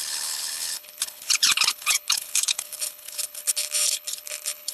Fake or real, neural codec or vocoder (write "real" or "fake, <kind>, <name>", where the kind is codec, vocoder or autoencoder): fake, codec, HILCodec